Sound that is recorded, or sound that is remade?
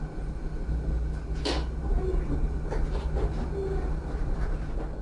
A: recorded